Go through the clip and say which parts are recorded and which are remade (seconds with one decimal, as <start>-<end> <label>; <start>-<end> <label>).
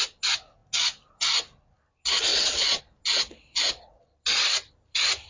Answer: 0.0-2.3 recorded; 2.3-2.8 remade; 2.8-3.2 recorded; 3.2-4.0 remade; 4.0-5.3 recorded